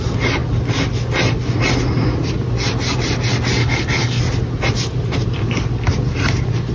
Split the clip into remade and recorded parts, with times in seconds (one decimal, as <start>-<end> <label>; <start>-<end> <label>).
0.0-3.6 recorded; 3.6-4.2 remade; 4.2-6.7 recorded